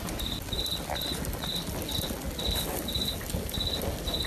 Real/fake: real